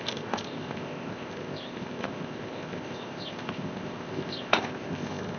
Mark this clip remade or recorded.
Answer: remade